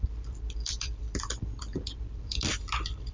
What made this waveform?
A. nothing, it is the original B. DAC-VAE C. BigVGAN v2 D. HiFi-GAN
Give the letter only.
C